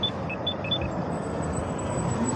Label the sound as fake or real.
real